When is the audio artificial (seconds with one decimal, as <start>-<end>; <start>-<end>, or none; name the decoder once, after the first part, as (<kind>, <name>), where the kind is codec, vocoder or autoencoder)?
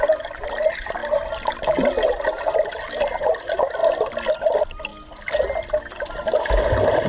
0.0-1.0 (vocoder, BigVGAN v2); 2.1-4.9; 6.5-7.1